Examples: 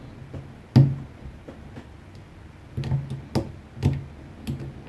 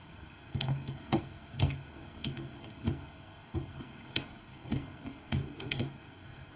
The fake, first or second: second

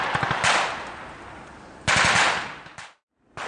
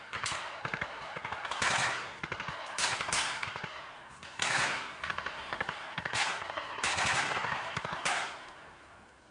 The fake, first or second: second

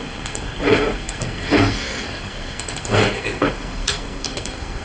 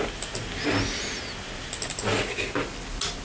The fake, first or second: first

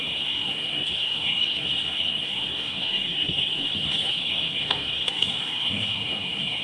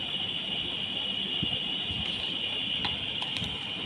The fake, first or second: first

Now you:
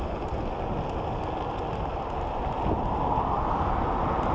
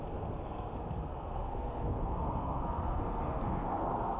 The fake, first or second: second